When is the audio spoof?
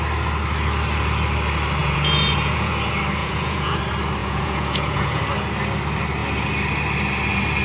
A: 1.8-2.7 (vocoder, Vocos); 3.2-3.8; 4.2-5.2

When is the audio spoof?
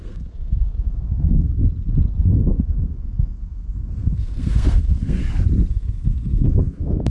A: 0.0-1.6 (codec, SNAC); 2.3-5.2; 5.7-7.1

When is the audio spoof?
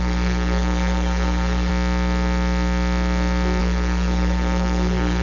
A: 0.0-1.7 (codec, SNAC); 3.6-5.2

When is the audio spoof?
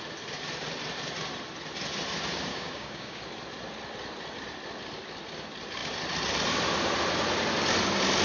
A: 2.5-3.2 (codec, DAC)